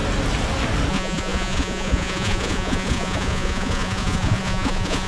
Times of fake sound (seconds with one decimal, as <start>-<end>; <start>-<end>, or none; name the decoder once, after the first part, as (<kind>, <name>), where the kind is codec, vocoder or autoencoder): 0.9-5.1 (vocoder, Vocos)